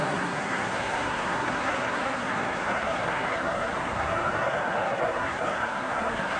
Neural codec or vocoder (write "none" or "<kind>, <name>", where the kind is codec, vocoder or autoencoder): codec, SNAC